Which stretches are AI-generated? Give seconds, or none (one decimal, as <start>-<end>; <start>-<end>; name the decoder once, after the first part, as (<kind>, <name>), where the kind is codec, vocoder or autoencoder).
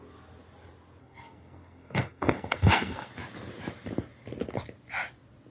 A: 1.0-3.1 (codec, SNAC)